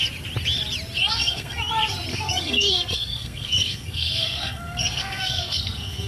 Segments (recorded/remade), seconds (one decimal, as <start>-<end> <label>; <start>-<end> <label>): 0.0-1.0 recorded; 1.0-1.7 remade; 1.7-2.1 recorded; 2.1-6.1 remade